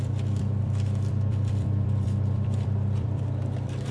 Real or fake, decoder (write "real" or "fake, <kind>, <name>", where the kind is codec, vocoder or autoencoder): fake, vocoder, BigVGAN v2